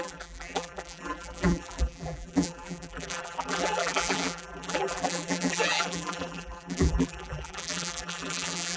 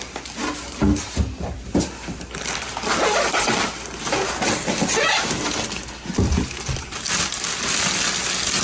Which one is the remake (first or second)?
first